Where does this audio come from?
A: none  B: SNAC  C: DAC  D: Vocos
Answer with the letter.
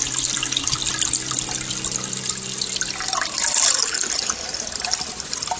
A